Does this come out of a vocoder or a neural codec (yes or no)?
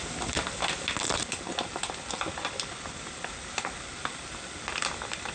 no